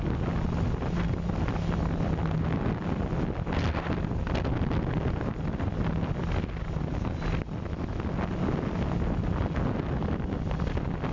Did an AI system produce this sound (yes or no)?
no